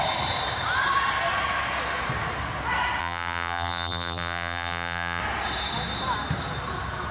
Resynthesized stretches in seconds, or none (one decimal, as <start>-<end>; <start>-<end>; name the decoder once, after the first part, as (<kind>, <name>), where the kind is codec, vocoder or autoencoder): 3.0-5.2 (vocoder, BigVGAN v2)